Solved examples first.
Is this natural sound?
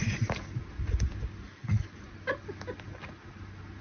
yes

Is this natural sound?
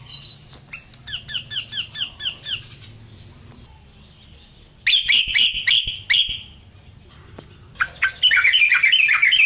yes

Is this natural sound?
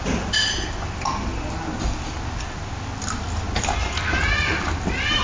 yes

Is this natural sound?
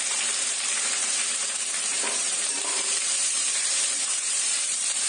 no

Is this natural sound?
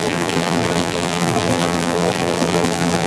no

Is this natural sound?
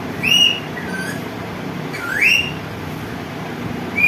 yes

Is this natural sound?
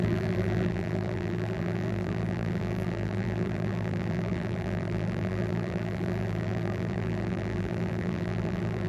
no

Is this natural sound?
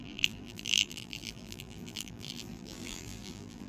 no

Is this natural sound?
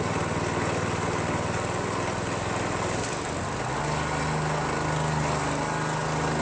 yes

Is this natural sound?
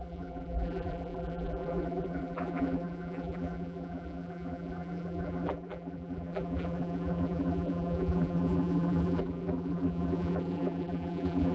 no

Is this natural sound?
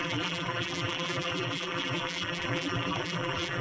no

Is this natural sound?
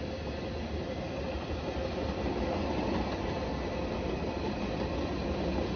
yes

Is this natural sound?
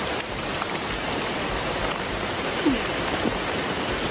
no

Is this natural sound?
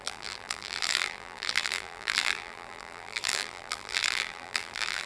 no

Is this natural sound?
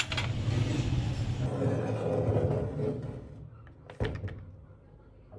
yes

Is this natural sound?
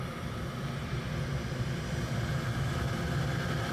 no